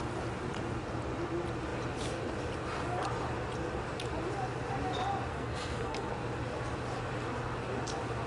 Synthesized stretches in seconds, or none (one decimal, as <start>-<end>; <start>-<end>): 5.3-6.1